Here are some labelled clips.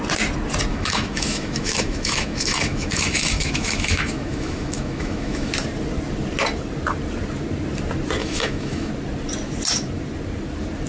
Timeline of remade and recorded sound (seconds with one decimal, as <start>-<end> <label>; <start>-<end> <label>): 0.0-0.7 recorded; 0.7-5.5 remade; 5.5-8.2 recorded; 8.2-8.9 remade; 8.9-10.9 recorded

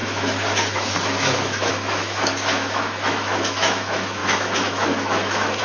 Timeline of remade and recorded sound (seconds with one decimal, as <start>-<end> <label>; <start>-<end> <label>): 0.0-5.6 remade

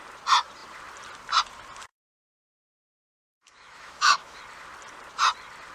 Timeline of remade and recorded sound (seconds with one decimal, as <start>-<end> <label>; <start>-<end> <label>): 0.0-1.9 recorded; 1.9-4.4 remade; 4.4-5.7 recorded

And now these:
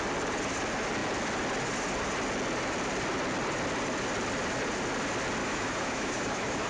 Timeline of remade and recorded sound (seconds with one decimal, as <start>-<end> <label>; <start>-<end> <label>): 0.0-5.4 recorded; 5.4-6.7 remade

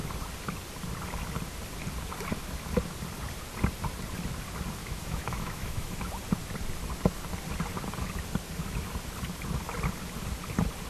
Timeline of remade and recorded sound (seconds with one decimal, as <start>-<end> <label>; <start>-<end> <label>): 0.0-4.8 recorded; 4.8-6.1 remade; 6.1-10.9 recorded

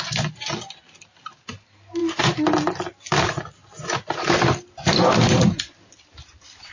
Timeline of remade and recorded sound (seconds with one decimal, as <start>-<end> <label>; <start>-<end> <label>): 0.0-6.7 recorded

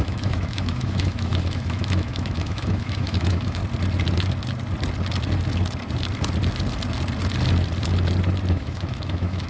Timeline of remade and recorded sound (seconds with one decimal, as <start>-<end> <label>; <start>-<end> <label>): 0.0-3.6 remade; 3.6-8.5 recorded; 8.5-9.5 remade

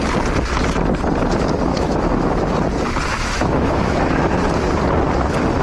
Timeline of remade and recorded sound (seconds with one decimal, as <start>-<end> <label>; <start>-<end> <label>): 0.0-1.7 recorded; 1.7-2.5 remade; 2.5-3.1 recorded; 3.1-4.3 remade; 4.3-5.6 recorded